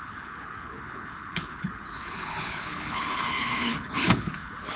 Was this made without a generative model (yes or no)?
no